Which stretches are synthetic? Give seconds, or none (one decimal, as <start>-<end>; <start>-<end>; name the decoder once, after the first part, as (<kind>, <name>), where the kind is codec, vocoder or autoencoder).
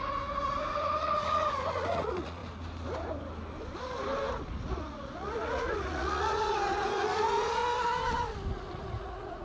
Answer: 0.0-2.4 (vocoder, Vocos); 4.3-7.6; 8.5-9.4